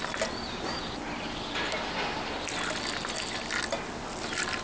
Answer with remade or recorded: recorded